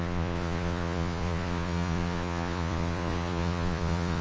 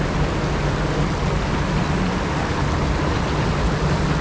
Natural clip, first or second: second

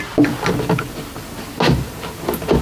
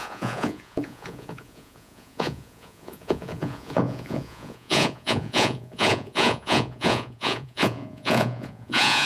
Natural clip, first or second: first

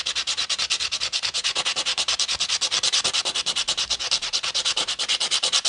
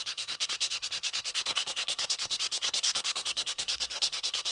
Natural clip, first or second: first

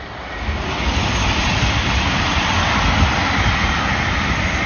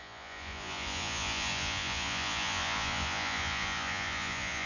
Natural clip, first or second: first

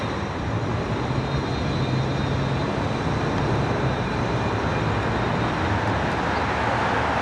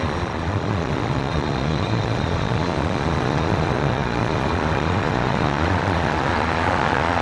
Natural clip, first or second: first